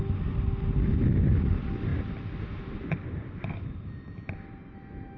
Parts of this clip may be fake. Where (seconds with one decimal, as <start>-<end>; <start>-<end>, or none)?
none